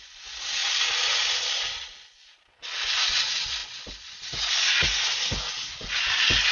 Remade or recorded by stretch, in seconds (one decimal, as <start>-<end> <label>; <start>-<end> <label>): 0.0-6.5 recorded